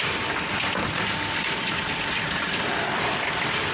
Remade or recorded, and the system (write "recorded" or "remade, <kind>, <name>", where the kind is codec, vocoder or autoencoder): remade, vocoder, BigVGAN v2